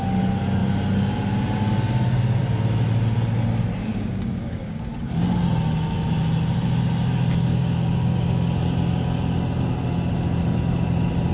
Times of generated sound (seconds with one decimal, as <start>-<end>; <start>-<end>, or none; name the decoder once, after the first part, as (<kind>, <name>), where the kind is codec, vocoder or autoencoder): 3.9-4.9 (codec, DAC); 7.5-8.4